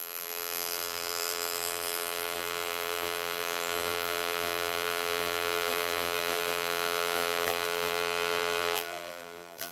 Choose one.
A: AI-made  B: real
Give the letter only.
A